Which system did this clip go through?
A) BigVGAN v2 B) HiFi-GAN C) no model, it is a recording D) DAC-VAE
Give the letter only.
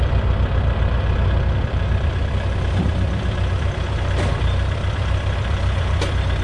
A